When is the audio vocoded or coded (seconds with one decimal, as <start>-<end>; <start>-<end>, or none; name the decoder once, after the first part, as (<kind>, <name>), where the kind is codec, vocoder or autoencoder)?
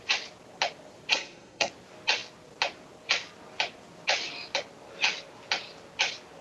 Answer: 1.1-1.7 (codec, SNAC)